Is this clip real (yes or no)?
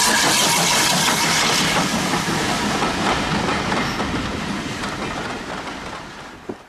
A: yes